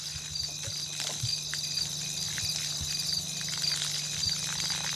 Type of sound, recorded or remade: recorded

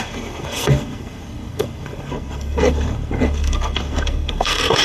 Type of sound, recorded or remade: remade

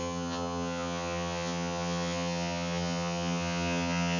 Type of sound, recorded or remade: remade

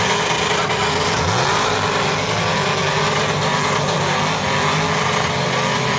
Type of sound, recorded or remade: recorded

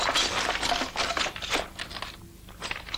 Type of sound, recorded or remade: recorded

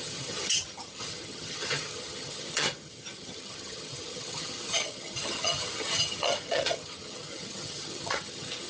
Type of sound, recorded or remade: remade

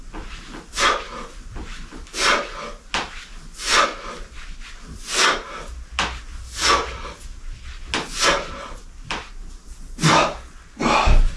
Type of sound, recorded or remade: recorded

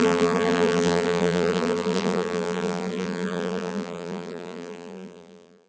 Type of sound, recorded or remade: remade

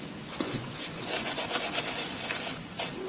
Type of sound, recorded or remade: remade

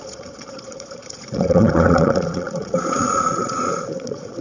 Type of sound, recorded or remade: remade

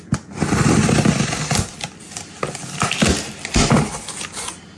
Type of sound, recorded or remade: recorded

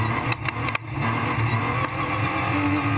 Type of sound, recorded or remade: recorded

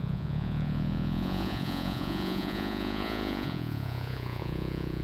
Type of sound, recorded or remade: remade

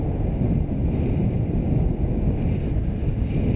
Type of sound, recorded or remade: recorded